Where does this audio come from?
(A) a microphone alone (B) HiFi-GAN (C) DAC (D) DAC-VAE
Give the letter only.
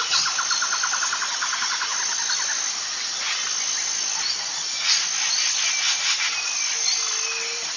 A